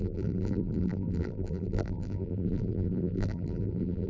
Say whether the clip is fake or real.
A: fake